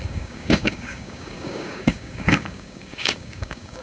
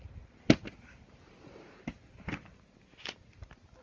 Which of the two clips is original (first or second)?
second